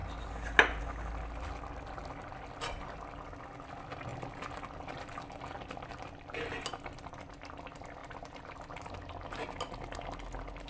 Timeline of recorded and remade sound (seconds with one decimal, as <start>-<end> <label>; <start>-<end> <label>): 0.0-8.0 recorded; 8.0-9.3 remade; 9.3-10.7 recorded

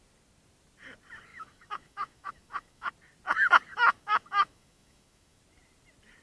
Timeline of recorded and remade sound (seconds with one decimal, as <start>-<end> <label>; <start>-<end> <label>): 0.0-1.3 recorded; 1.3-2.9 remade; 2.9-3.7 recorded; 3.7-5.4 remade; 5.4-6.2 recorded